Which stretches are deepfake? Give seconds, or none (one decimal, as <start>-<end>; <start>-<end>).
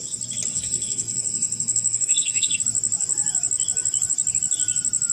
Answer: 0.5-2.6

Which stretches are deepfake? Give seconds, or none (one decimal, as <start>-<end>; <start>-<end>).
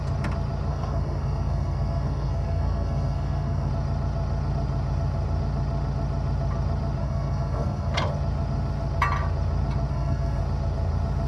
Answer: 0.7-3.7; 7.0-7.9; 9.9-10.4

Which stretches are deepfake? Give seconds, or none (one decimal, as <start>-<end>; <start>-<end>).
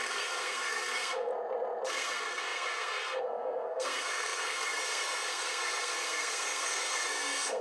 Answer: 0.0-1.3; 1.9-7.6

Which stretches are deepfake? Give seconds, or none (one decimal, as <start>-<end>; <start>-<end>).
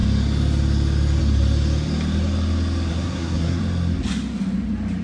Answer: 2.9-3.6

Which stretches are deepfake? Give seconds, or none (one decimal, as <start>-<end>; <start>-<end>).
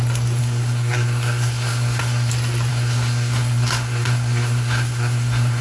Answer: 0.4-2.3; 2.7-5.6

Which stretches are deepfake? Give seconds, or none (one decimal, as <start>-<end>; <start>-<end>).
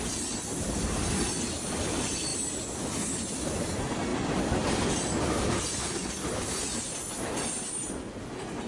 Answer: none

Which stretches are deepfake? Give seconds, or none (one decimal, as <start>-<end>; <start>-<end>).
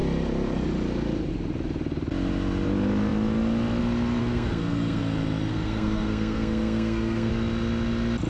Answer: 4.2-5.0; 5.5-7.3